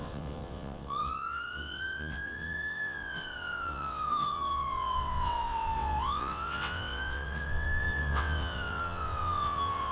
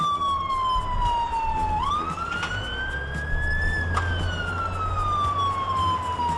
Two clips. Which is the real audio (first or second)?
second